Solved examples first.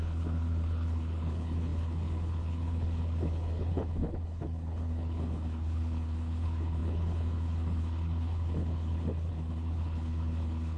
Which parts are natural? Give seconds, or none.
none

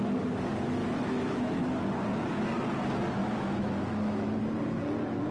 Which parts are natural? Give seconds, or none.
0.0-0.8; 1.8-3.2; 4.4-5.3